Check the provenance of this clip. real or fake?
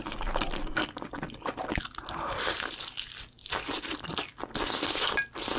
real